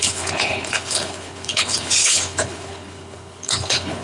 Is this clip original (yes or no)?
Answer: no